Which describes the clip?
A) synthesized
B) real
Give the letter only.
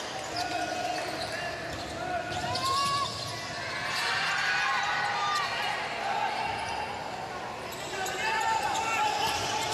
B